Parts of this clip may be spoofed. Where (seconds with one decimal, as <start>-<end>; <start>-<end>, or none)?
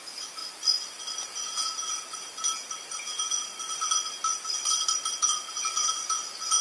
0.0-0.4; 1.2-3.5; 5.1-6.6